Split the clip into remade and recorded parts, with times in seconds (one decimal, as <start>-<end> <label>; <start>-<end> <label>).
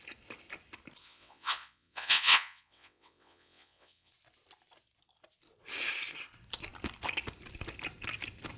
0.0-1.0 recorded; 1.0-4.1 remade; 4.1-8.6 recorded